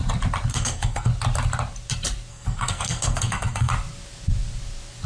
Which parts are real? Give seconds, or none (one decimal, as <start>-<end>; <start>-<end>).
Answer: 0.0-0.5; 1.1-2.3; 3.7-5.1